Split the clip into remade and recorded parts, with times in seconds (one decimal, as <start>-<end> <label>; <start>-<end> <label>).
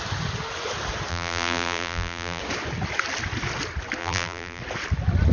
0.0-1.1 recorded; 1.1-2.4 remade; 2.4-4.0 recorded; 4.0-4.6 remade; 4.6-5.3 recorded